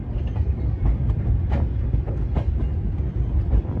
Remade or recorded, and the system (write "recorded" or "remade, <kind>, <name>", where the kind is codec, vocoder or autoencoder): recorded